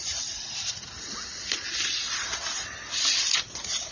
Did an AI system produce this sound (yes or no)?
yes